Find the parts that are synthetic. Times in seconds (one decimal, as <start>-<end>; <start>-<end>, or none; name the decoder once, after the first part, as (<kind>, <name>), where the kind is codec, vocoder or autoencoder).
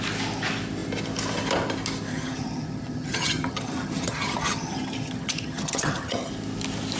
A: 2.1-6.3 (vocoder, HiFi-GAN)